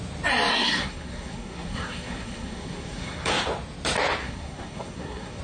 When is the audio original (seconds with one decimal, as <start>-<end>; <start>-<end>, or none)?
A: 0.0-0.5; 3.3-4.2